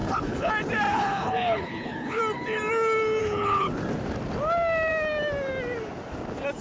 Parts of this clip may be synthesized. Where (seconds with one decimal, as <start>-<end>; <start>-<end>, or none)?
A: 0.0-0.5; 0.9-2.2; 3.2-3.7